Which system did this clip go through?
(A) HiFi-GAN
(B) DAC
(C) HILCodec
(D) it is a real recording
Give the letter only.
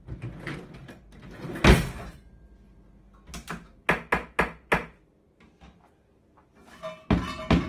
D